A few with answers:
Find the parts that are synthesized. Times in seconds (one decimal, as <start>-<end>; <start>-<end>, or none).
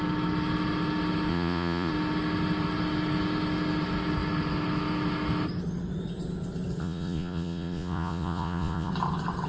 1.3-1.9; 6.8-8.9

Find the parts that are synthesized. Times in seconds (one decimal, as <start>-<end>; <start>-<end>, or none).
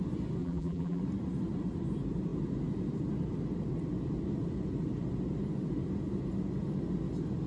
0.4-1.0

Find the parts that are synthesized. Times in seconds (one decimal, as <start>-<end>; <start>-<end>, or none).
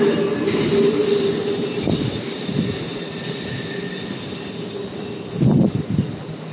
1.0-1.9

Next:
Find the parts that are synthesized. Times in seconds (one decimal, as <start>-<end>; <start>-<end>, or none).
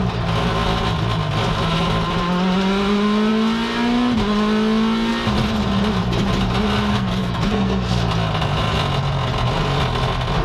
6.9-8.0